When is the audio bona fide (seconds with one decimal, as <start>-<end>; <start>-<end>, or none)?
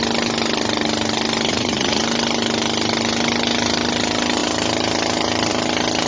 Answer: 0.0-1.5; 2.0-6.1